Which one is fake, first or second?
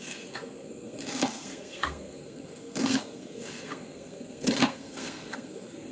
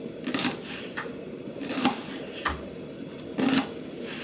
first